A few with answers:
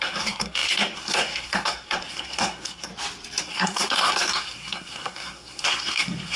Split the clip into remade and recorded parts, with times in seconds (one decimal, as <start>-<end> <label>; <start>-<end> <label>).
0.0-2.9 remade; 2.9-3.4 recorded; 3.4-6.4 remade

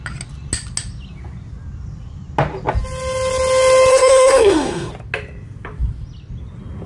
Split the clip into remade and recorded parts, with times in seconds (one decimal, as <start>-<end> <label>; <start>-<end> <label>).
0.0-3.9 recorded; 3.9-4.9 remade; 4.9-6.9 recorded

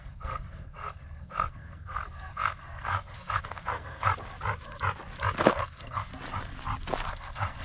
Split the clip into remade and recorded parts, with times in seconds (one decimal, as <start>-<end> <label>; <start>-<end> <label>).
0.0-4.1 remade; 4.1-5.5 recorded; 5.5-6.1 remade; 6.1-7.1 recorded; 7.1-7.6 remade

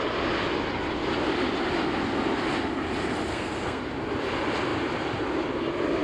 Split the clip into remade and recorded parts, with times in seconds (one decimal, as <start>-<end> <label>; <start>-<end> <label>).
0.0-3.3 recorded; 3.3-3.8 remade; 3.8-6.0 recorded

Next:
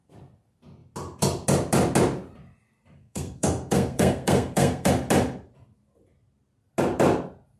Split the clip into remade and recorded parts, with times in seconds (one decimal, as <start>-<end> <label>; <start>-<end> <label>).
0.0-3.0 recorded; 3.0-4.9 remade; 4.9-7.6 recorded